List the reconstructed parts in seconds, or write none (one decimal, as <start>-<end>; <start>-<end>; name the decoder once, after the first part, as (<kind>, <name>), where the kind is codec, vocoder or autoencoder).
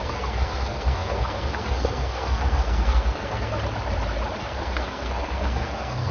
0.0-3.6 (codec, SNAC); 4.4-6.1